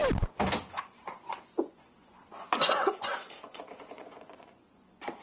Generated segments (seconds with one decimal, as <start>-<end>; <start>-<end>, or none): 0.7-5.2